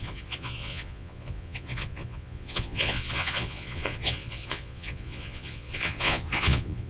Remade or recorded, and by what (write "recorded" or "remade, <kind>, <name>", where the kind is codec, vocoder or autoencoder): remade, vocoder, Vocos